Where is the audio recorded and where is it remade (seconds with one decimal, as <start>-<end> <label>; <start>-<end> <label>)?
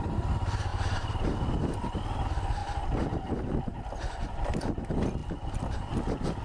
0.0-0.7 recorded; 0.7-1.3 remade; 1.3-6.4 recorded